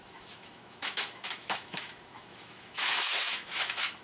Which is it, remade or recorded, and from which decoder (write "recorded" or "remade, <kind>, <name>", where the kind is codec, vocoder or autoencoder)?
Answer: remade, autoencoder, DAC-VAE